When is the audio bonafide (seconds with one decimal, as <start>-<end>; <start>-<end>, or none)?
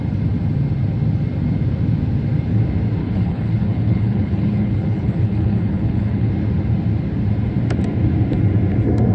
0.0-3.0; 6.3-9.1